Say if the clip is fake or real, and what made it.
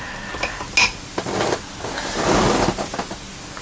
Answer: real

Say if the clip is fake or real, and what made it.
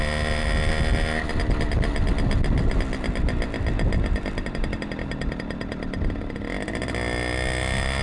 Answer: real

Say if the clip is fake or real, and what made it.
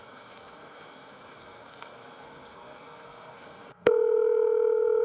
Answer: fake, codec, SNAC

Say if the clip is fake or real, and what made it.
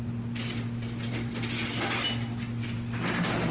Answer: real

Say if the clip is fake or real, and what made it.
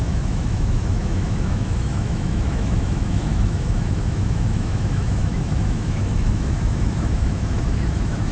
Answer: fake, autoencoder, DAC-VAE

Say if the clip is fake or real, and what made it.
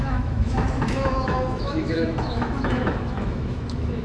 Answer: fake, autoencoder, DAC-VAE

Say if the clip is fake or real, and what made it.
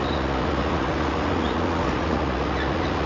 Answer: fake, vocoder, Vocos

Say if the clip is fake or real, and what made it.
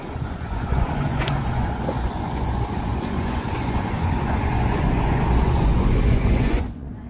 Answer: fake, vocoder, Vocos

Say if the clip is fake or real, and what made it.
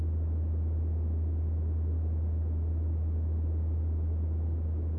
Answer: real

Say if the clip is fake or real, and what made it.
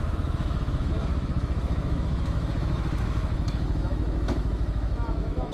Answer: fake, autoencoder, DAC-VAE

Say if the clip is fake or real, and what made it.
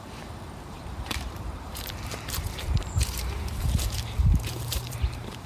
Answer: fake, vocoder, BigVGAN v2